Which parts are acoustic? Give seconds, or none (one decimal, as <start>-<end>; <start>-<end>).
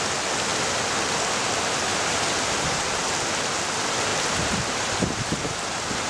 0.0-1.9; 3.0-4.1